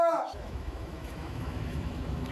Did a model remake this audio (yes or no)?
yes